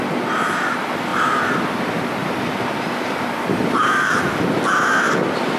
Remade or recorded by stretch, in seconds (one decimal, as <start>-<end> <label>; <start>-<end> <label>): 0.0-1.1 recorded; 1.1-1.7 remade; 1.7-2.2 recorded; 2.2-4.3 remade; 4.3-5.6 recorded